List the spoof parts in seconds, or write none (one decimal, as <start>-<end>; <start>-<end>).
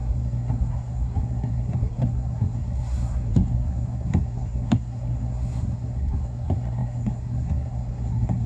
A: 0.0-8.5